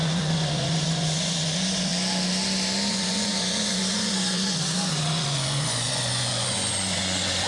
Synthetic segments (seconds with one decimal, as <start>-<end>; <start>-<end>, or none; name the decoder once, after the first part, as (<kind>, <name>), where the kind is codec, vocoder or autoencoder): 0.0-1.9 (vocoder, Vocos); 2.9-7.5